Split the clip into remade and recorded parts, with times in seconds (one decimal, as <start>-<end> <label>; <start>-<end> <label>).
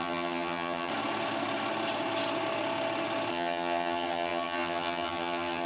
0.0-0.9 remade; 0.9-3.3 recorded; 3.3-5.7 remade